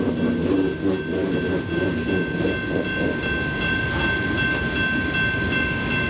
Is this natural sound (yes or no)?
yes